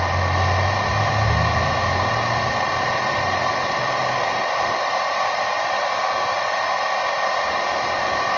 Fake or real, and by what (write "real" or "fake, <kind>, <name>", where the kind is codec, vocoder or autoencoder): real